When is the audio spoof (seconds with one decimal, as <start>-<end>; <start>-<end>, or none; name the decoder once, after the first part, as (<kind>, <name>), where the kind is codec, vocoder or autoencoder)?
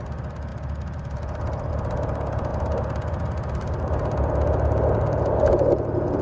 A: none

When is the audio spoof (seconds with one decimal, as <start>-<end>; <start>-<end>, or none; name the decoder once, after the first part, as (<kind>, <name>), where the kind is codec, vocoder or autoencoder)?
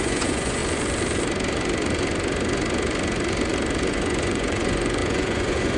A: 0.0-0.6 (vocoder, Vocos); 3.9-5.8